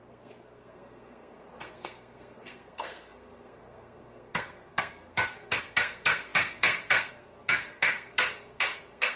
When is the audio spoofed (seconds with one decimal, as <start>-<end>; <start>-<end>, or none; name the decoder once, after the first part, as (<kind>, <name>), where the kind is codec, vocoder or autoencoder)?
0.0-9.2 (codec, SNAC)